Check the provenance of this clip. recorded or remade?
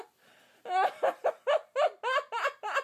recorded